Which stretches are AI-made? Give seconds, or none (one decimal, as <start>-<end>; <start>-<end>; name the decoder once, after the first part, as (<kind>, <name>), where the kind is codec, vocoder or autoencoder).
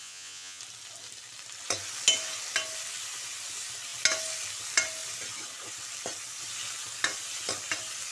0.0-0.6 (vocoder, Vocos)